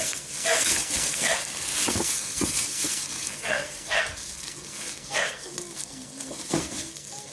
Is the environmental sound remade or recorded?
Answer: remade